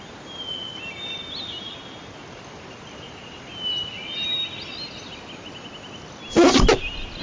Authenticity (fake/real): real